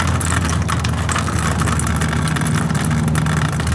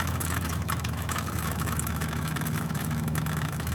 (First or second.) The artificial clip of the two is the second